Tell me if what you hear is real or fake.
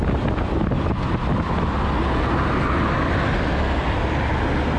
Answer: real